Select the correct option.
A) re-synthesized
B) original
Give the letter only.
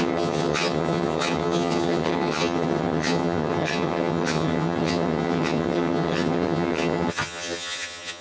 A